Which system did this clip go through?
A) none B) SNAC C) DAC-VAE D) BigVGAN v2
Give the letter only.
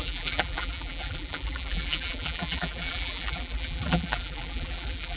D